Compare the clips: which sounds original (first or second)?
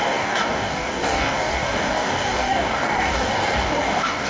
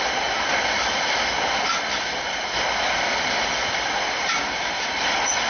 second